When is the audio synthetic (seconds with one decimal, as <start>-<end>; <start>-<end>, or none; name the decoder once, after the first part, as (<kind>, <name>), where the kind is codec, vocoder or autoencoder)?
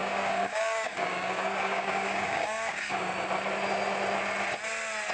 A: 0.0-3.1 (codec, DAC)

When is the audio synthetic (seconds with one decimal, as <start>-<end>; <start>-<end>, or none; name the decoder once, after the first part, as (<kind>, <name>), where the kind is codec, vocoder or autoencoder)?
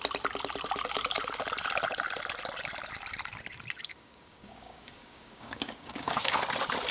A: 3.9-6.4 (codec, DAC)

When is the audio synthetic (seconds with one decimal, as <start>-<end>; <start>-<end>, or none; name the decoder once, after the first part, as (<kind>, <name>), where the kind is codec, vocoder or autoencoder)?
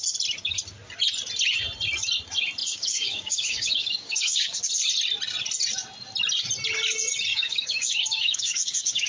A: 2.6-4.6 (codec, DAC); 7.3-9.1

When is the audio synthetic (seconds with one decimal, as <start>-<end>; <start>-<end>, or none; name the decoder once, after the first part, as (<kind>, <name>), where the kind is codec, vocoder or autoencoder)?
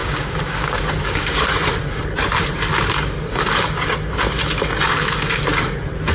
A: 0.0-1.5 (codec, DAC); 4.9-5.4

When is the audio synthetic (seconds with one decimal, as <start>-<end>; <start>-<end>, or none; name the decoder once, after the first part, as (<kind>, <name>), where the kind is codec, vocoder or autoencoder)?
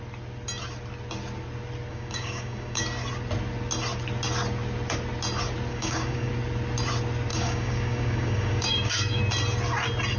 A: 1.9-2.8 (codec, DAC); 5.7-6.3; 7.3-9.2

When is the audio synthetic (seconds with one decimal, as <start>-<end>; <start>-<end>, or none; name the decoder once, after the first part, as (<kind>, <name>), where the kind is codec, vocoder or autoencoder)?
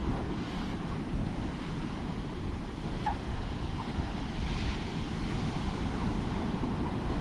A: 0.0-0.7 (codec, DAC)